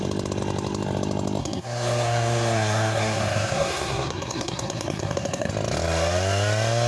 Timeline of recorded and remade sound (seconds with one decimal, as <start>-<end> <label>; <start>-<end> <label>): 0.0-1.4 recorded; 1.4-5.5 remade; 5.5-6.9 recorded